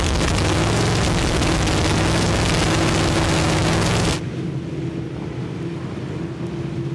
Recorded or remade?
recorded